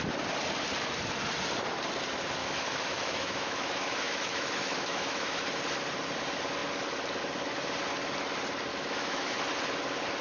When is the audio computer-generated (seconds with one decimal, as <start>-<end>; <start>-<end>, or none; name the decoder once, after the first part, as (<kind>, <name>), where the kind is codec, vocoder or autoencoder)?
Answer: 2.4-5.4 (autoencoder, DAC-VAE); 8.7-9.4